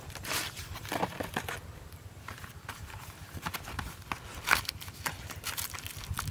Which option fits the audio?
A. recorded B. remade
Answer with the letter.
A